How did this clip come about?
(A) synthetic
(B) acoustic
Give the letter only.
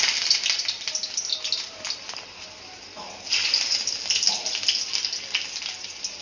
B